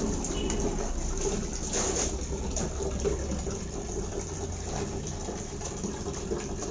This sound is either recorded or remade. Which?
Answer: recorded